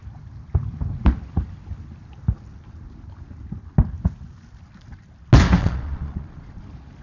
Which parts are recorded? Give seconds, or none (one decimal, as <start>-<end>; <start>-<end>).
0.0-5.6; 6.6-7.0